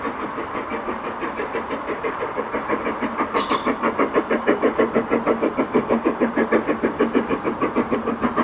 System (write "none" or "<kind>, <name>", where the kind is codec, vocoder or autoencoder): none